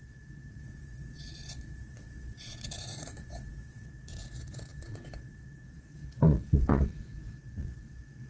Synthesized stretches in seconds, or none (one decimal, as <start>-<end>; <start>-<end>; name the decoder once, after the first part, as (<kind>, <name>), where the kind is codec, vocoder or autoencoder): 0.0-8.3 (vocoder, Vocos)